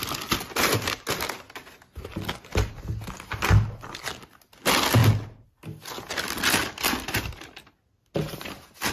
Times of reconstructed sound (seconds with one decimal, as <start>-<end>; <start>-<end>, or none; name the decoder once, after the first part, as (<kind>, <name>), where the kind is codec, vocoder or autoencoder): none